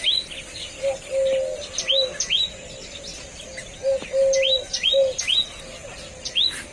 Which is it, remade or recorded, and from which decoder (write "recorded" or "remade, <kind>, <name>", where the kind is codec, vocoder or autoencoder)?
recorded